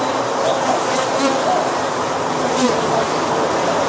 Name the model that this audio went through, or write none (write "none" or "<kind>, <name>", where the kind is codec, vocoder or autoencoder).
vocoder, BigVGAN v2